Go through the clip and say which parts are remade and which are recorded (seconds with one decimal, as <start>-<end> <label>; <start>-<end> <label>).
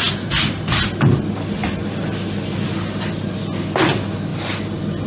0.0-5.1 recorded